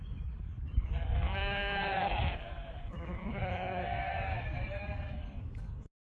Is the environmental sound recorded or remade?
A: remade